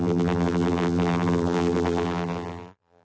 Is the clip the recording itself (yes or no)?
no